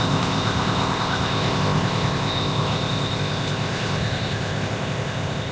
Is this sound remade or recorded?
remade